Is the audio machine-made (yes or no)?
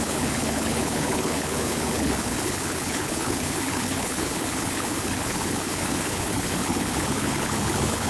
yes